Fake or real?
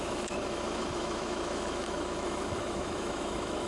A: fake